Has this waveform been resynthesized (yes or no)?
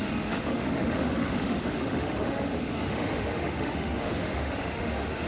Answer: yes